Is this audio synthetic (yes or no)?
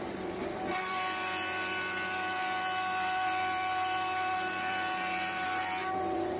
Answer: yes